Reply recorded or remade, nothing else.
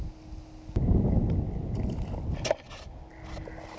recorded